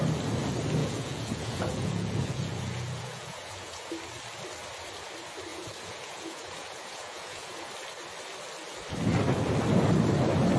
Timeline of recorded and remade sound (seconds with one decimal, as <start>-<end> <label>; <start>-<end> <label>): 0.0-0.8 recorded; 0.8-3.9 remade; 3.9-5.5 recorded; 5.5-7.7 remade; 7.7-10.6 recorded